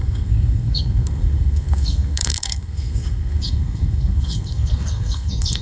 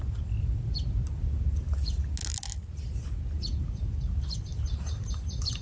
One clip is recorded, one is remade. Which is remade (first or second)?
first